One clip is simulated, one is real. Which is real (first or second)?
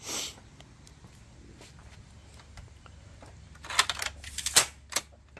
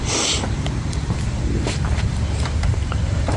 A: first